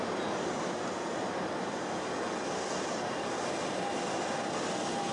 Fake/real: real